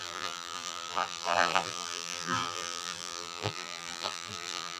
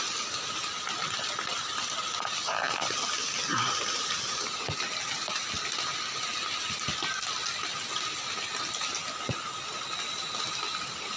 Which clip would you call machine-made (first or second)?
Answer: first